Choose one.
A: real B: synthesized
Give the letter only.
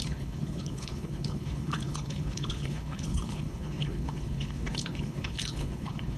B